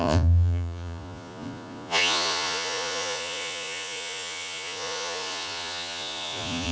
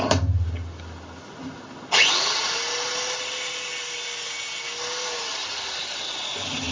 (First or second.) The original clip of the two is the second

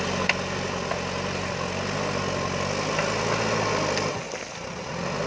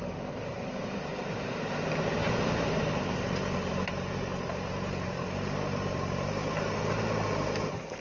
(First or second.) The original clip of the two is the first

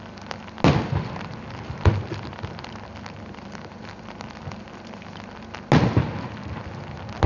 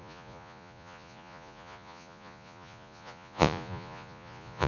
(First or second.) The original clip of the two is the first